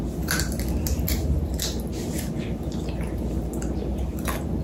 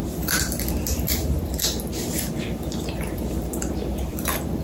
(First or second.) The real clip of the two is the first